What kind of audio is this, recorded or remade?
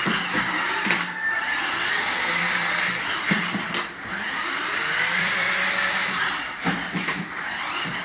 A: remade